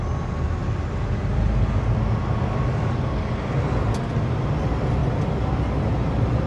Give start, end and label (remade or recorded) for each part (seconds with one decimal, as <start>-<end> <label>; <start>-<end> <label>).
0.0-6.5 recorded